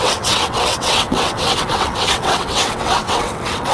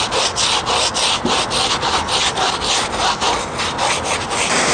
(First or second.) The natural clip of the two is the second